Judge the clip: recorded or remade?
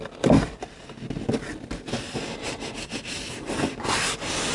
recorded